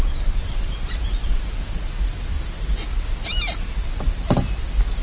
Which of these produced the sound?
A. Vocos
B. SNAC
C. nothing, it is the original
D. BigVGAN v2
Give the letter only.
C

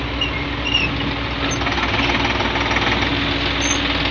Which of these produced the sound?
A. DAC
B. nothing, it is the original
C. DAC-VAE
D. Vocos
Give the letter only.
B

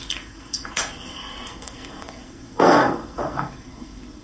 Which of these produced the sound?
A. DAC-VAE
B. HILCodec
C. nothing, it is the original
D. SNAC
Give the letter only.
D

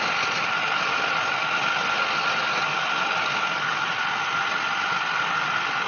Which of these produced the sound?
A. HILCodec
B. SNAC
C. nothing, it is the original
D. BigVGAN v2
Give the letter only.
C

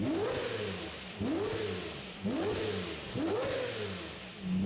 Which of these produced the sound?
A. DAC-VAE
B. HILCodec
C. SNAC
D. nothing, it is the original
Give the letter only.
D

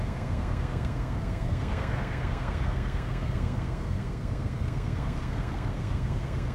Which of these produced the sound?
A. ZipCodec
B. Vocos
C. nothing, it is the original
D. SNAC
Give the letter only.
D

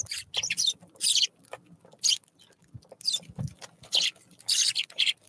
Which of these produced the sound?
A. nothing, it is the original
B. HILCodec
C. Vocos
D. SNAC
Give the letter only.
A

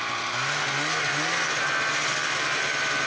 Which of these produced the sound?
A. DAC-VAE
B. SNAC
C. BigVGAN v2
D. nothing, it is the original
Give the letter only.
D